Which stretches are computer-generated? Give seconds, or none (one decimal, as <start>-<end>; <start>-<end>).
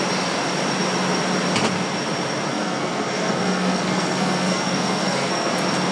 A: 2.5-5.5